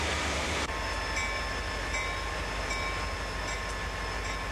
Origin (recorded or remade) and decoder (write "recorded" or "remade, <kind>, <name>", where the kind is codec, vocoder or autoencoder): recorded